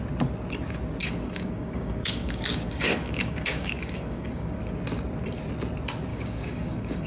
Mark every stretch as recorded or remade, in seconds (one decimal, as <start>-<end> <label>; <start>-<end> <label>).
0.0-1.0 recorded; 1.0-4.6 remade; 4.6-6.1 recorded; 6.1-7.1 remade